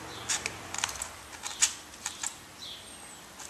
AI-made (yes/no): no